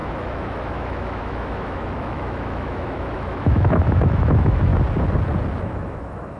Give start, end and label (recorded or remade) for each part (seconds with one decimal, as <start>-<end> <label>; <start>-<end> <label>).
0.0-4.7 remade; 4.7-5.6 recorded; 5.6-6.4 remade